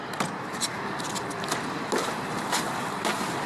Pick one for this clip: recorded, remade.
recorded